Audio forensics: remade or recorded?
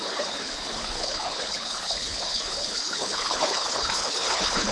remade